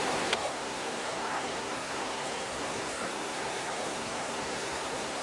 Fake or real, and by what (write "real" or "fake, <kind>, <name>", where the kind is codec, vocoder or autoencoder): fake, codec, SNAC